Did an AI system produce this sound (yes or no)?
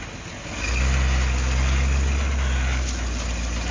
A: no